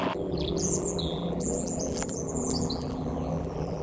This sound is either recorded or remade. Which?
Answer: remade